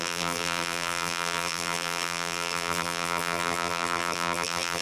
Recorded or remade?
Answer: remade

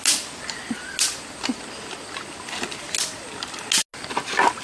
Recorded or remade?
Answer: recorded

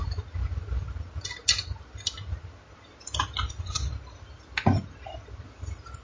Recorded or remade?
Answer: recorded